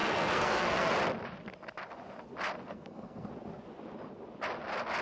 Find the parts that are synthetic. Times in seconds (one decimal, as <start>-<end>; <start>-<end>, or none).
0.0-0.9; 2.7-3.3